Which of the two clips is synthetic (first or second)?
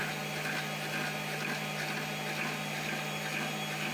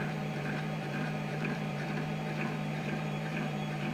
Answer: second